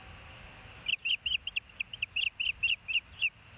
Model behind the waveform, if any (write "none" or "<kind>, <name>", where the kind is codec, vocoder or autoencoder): none